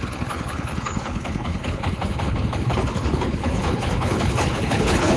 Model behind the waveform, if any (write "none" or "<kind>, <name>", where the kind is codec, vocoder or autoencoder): codec, HILCodec